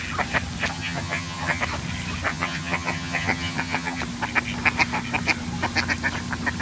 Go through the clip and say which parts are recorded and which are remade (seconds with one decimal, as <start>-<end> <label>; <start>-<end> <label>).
0.0-0.7 recorded; 0.7-1.6 remade; 1.6-2.3 recorded; 2.3-4.0 remade; 4.0-6.6 recorded